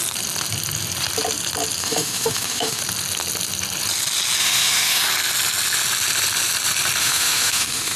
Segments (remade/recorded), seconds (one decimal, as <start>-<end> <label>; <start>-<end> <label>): 0.0-1.8 recorded; 1.8-2.8 remade; 2.8-4.4 recorded; 4.4-5.0 remade; 5.0-7.0 recorded; 7.0-8.0 remade